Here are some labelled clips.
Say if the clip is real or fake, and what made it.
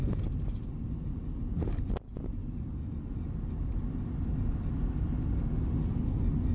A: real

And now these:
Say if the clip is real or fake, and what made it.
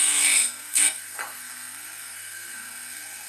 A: fake, codec, SNAC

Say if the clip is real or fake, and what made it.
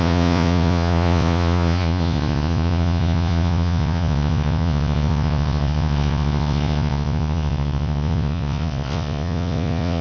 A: fake, vocoder, Vocos